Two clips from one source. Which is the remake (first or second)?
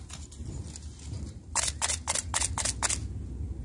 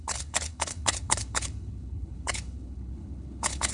second